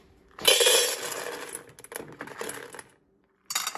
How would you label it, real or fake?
real